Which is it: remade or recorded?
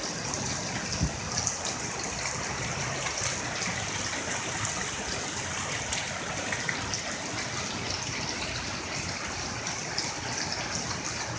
recorded